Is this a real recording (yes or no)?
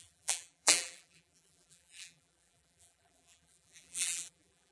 no